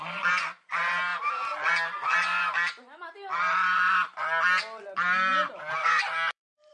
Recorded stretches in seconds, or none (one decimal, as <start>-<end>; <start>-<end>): 0.0-5.3